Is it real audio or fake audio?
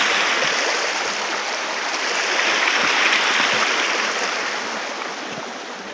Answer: real